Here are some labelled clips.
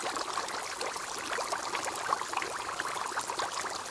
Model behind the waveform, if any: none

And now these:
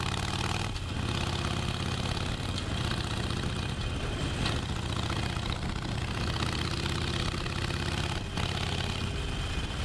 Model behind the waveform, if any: none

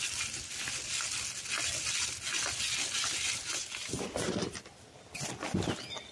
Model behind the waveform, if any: none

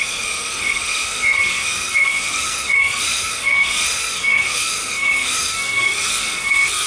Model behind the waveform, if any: codec, SNAC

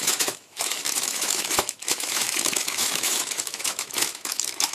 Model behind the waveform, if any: autoencoder, DAC-VAE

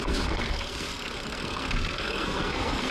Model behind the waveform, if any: codec, SNAC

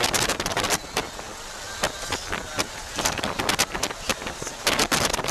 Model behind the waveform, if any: none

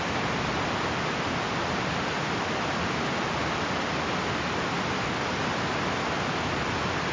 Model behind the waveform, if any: none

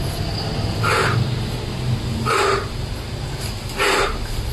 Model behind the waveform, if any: none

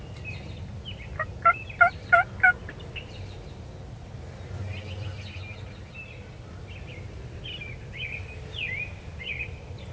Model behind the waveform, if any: none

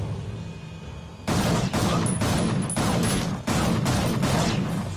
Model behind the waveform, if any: none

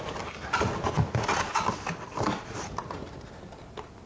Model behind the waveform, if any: none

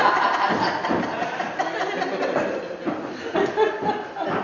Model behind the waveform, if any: none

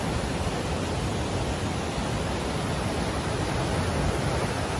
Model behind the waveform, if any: none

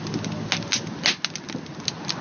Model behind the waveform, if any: none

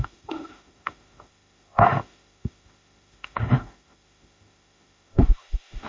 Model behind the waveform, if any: autoencoder, DAC-VAE